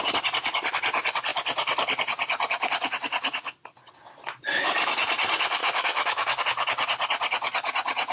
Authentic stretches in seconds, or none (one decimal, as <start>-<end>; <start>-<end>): 0.0-5.6; 6.4-8.1